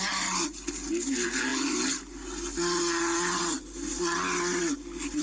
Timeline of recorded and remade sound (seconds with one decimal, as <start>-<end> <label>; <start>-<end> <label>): 0.0-5.2 recorded